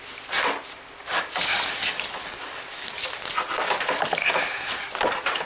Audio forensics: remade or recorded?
recorded